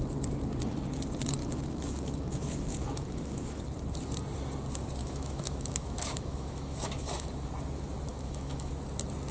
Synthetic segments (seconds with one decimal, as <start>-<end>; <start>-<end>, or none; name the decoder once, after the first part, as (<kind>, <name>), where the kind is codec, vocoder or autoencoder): 1.4-3.6 (autoencoder, DAC-VAE); 5.0-7.3; 8.1-8.7